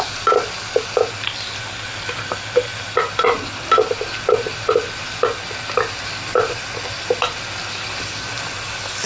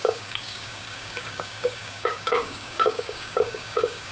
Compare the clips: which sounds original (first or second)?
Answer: first